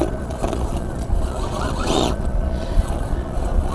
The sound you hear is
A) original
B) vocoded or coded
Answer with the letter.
B